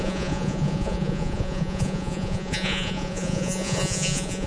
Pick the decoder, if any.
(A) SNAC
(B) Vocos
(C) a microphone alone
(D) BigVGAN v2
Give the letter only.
B